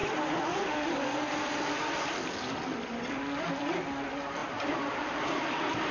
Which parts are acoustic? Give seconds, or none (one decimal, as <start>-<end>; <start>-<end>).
0.0-4.4; 5.4-5.9